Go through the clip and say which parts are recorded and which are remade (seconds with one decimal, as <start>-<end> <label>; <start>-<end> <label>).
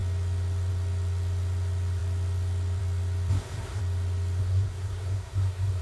0.0-3.3 recorded; 3.3-3.8 remade; 3.8-4.4 recorded; 4.4-5.8 remade